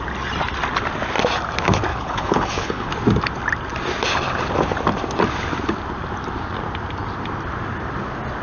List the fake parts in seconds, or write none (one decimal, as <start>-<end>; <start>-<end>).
1.9-2.9